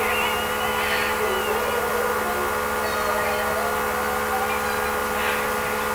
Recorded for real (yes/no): yes